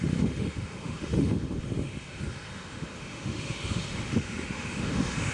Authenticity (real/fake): fake